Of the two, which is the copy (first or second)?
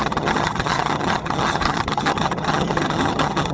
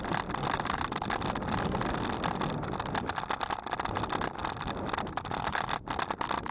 first